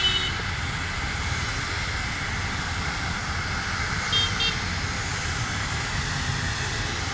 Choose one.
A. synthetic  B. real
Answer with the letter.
B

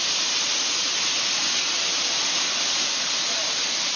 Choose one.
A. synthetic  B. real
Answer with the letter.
B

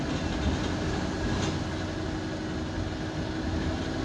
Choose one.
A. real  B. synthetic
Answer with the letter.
A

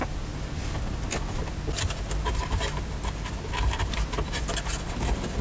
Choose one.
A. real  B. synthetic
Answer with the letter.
A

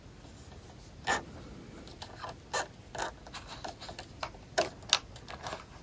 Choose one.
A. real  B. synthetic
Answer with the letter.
A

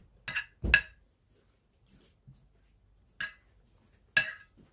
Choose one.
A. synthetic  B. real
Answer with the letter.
B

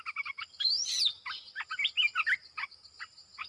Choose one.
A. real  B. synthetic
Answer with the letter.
A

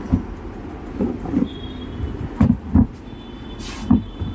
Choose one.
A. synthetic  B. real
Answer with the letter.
B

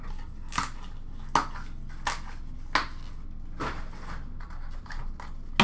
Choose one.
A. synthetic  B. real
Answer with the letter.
B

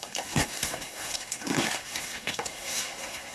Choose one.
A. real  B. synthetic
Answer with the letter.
B